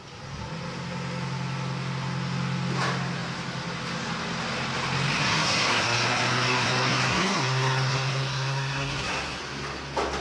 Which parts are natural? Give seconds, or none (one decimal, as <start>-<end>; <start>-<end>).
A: 0.0-5.2; 9.4-10.2